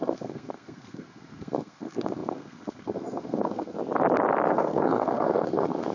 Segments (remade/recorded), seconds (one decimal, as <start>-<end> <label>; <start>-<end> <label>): 0.0-3.8 remade; 3.8-4.5 recorded; 4.5-5.9 remade